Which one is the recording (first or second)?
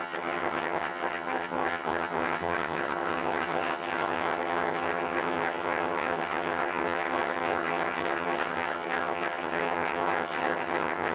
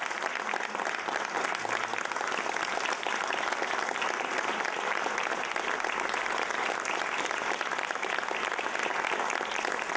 second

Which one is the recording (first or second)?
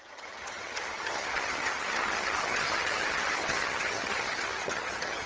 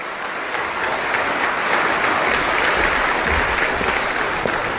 second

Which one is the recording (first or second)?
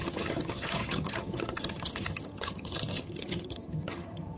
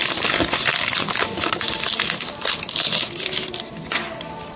second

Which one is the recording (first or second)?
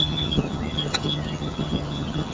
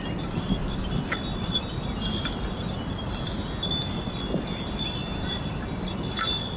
second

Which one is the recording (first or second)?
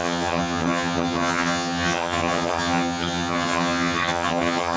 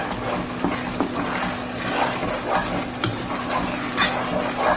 second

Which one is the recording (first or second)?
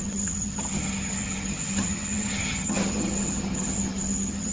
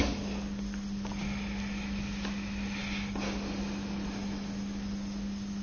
second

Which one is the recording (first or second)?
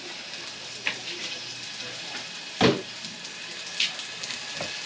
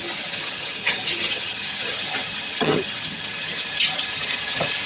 first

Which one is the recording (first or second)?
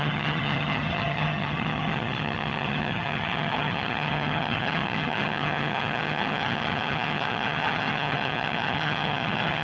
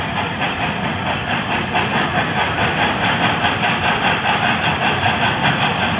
second